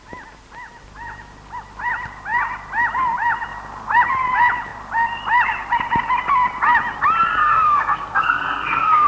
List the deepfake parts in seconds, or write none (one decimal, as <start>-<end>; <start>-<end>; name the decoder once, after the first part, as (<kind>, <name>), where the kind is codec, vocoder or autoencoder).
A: 7.4-9.1 (codec, SNAC)